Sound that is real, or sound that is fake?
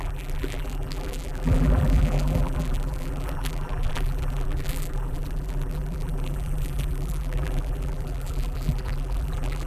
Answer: fake